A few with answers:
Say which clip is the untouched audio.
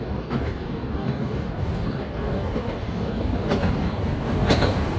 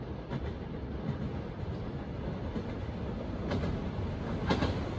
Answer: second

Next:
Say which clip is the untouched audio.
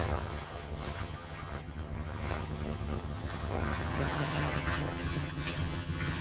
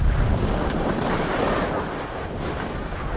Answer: second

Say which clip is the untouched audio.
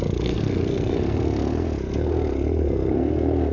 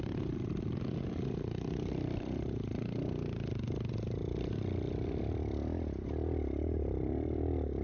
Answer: second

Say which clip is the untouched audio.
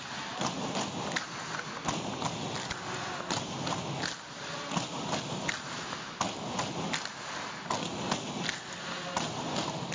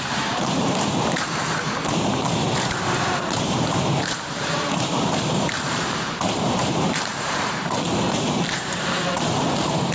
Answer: first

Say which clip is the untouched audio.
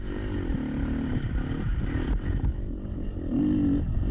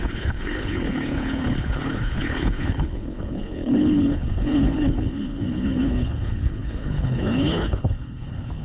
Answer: first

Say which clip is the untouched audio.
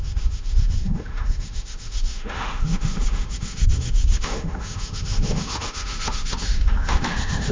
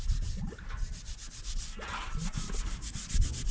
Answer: second